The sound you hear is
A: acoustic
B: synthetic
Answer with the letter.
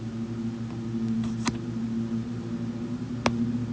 A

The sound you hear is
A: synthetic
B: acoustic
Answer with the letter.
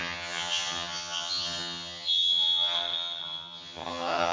A